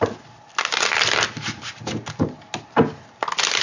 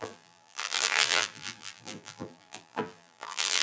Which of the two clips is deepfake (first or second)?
second